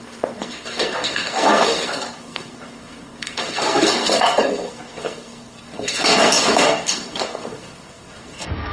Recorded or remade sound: remade